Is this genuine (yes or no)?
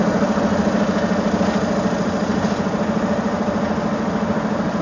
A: yes